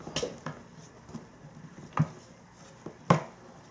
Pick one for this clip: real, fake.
real